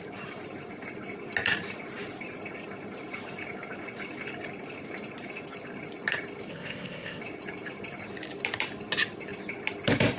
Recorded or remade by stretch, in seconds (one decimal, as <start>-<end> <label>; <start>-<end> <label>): 0.0-6.5 recorded; 6.5-7.2 remade; 7.2-10.2 recorded